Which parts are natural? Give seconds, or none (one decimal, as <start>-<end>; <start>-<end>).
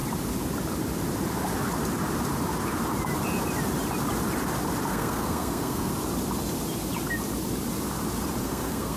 0.0-4.9; 5.9-8.4